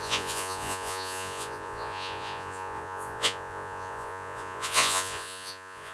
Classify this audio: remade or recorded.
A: remade